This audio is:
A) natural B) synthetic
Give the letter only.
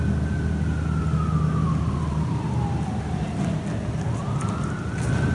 A